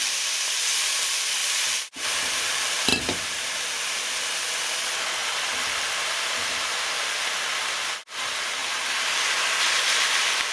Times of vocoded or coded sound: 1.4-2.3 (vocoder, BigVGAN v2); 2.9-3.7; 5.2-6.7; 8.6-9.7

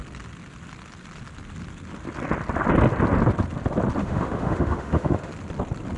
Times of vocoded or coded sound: 4.0-5.3 (autoencoder, DAC-VAE)

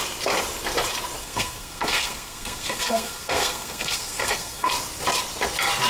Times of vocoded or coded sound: 1.2-4.7 (codec, SNAC)

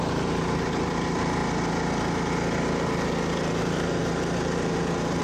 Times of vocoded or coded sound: 0.0-1.4 (vocoder, BigVGAN v2); 3.4-5.2

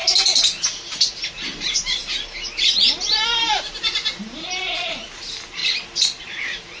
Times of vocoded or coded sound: 1.1-2.0 (vocoder, BigVGAN v2); 2.6-5.6; 6.2-6.8